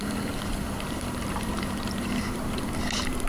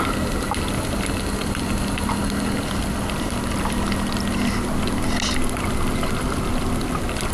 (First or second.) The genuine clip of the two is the second